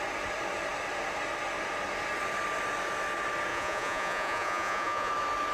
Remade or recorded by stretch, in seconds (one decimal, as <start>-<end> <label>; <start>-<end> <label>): 0.0-3.5 recorded; 3.5-5.1 remade; 5.1-5.5 recorded